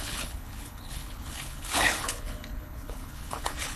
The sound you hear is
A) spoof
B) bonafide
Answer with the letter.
A